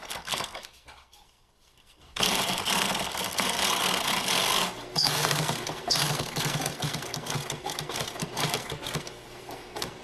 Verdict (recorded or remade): remade